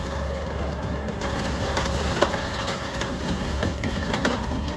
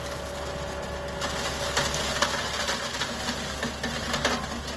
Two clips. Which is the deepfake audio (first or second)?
first